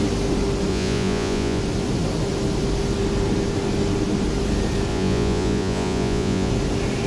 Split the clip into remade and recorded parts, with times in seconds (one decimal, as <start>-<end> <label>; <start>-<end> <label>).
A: 0.0-0.7 recorded; 0.7-1.6 remade; 1.6-4.9 recorded; 4.9-6.5 remade; 6.5-7.1 recorded